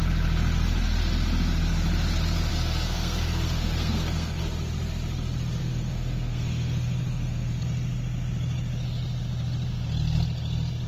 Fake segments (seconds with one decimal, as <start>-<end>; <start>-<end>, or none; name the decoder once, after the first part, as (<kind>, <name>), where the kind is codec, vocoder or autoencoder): 2.5-4.4 (codec, SNAC); 5.6-7.6